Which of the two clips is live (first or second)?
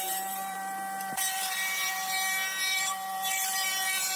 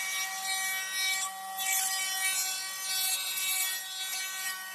second